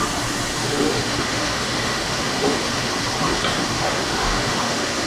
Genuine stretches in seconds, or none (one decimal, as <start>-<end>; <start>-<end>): 0.0-0.5; 2.9-3.5